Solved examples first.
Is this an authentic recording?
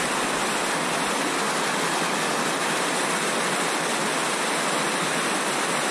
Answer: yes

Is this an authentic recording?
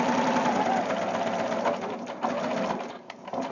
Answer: yes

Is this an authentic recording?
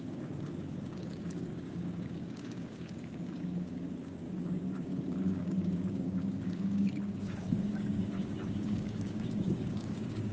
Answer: no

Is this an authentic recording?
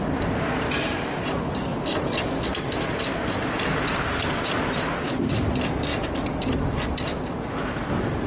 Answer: yes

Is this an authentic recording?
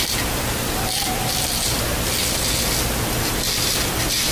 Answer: yes